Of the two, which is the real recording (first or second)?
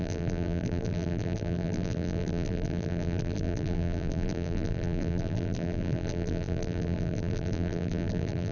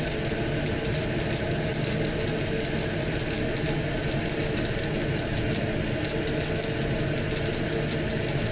second